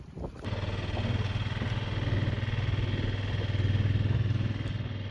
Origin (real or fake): real